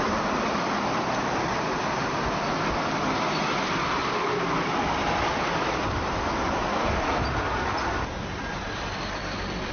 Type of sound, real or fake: real